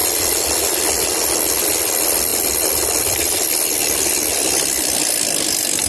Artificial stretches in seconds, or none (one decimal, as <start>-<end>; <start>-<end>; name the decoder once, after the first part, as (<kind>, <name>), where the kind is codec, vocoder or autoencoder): none